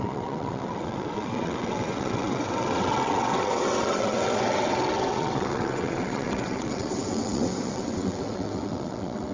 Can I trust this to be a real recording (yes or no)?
no